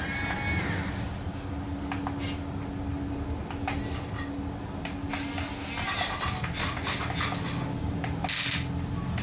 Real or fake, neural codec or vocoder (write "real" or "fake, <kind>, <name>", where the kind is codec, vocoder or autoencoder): real